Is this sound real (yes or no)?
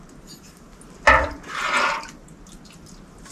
yes